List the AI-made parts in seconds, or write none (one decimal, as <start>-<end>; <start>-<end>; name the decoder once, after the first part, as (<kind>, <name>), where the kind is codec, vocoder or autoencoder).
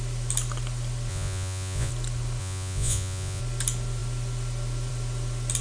1.1-1.9 (vocoder, Vocos); 2.4-3.4